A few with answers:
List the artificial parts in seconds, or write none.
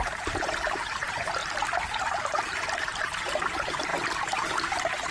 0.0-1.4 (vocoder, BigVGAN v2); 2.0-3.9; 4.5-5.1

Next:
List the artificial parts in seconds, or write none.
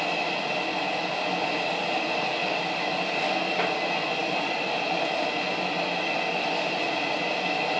2.4-3.2 (vocoder, BigVGAN v2); 4.2-5.3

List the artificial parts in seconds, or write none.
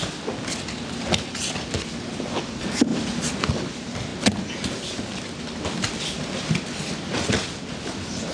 none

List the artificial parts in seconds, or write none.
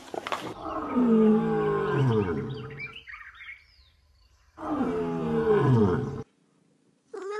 none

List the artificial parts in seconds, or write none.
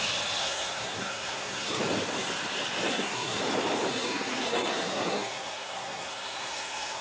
0.4-1.8 (codec, SNAC); 2.9-3.4; 3.9-7.0